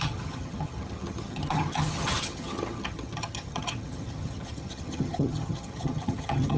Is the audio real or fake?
fake